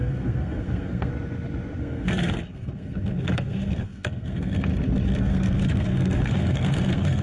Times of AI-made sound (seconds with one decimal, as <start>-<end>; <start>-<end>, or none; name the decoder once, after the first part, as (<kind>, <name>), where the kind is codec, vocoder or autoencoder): 0.0-1.1 (codec, SNAC); 1.8-4.7; 5.2-7.2

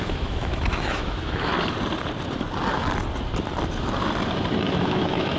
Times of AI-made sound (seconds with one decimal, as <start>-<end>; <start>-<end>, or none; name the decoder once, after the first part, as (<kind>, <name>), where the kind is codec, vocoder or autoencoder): 0.0-1.5 (autoencoder, DAC-VAE); 4.7-5.4